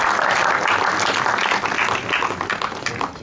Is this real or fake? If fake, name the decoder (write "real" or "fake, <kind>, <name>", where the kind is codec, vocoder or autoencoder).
real